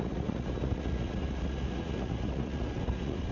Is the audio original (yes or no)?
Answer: no